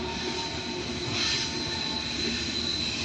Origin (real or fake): real